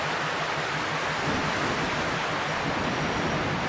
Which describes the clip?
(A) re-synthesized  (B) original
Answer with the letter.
B